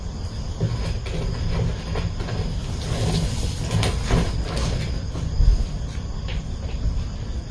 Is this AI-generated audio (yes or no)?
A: no